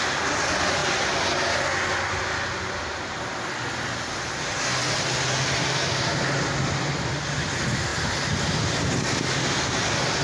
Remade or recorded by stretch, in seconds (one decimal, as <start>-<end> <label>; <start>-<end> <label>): 0.0-10.2 recorded